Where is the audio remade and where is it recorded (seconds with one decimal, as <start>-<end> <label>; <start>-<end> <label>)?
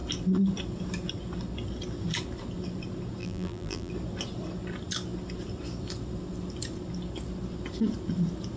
0.0-3.2 recorded; 3.2-3.9 remade; 3.9-8.6 recorded